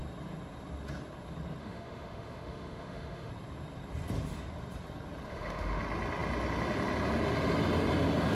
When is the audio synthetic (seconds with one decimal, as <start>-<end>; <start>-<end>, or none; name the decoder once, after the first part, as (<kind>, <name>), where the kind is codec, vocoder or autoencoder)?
1.6-3.3 (autoencoder, DAC-VAE); 5.3-5.8